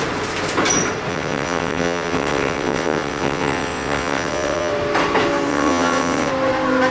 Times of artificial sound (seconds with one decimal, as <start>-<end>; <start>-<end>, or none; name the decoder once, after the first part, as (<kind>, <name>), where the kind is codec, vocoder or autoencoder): 1.1-4.7 (vocoder, WaveNeXt); 5.5-6.3